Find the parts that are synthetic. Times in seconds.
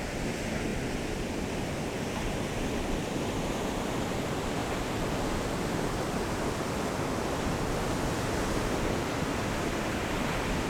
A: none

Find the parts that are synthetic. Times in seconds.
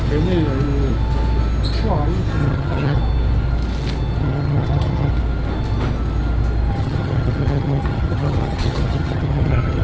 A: 2.4-3.0; 4.2-5.1; 6.7-9.8